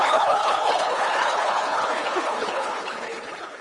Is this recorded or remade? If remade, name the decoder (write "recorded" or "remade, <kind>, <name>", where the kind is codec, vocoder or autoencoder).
remade, codec, HILCodec